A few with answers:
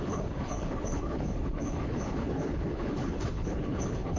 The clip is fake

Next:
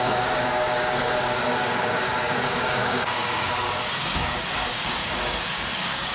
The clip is fake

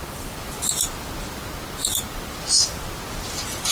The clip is real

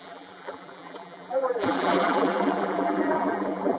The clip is fake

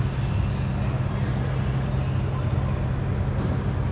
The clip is real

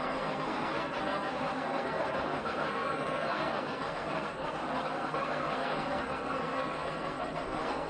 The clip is fake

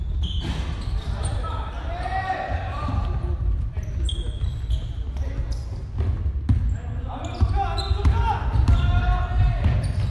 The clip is real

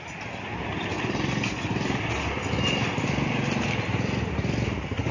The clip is real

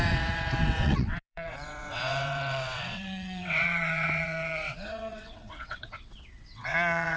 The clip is fake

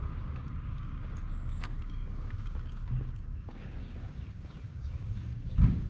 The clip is fake